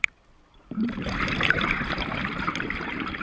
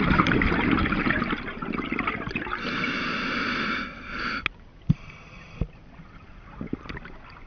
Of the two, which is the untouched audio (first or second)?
second